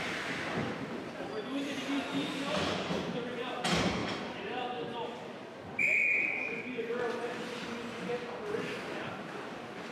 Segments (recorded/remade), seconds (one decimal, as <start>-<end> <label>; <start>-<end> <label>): 0.0-0.6 recorded; 0.6-2.5 remade; 2.5-9.9 recorded